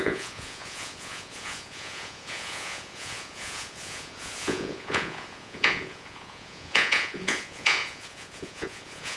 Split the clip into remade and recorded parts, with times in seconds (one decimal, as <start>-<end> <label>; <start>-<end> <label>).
0.0-9.2 remade